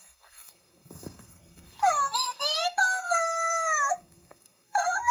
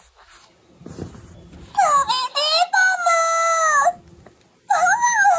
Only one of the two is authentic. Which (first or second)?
second